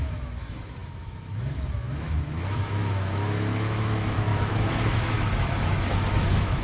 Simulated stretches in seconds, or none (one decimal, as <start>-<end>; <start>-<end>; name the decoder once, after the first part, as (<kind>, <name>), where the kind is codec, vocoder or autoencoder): 0.0-6.6 (autoencoder, DAC-VAE)